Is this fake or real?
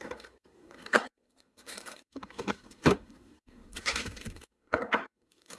fake